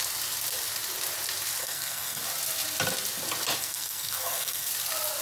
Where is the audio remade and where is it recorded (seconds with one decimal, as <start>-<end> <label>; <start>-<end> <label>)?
0.0-1.6 recorded; 1.6-2.2 remade; 2.2-3.6 recorded; 3.6-4.7 remade; 4.7-5.2 recorded